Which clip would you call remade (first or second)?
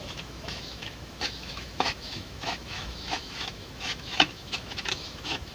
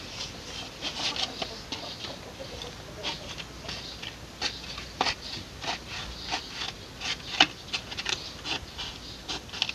first